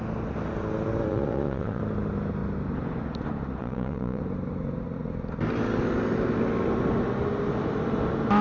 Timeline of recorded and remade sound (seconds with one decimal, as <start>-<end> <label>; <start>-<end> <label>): 0.0-1.1 recorded; 1.1-1.8 remade; 1.8-3.6 recorded; 3.6-4.2 remade; 4.2-8.4 recorded